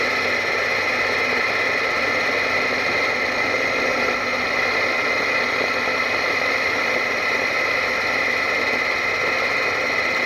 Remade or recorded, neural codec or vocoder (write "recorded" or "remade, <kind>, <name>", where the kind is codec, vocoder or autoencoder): recorded